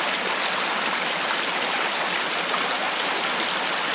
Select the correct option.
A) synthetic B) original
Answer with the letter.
B